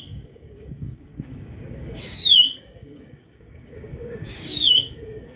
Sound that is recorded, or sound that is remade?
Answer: remade